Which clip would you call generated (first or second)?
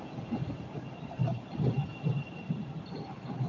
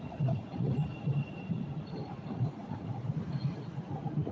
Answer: second